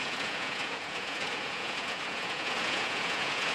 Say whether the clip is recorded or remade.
remade